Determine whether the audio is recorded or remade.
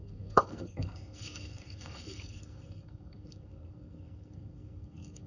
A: remade